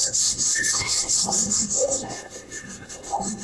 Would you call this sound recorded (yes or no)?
no